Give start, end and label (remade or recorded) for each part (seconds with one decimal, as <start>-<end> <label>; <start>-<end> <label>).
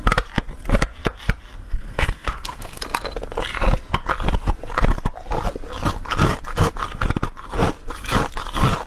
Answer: 0.0-1.6 recorded; 1.6-2.8 remade; 2.8-8.9 recorded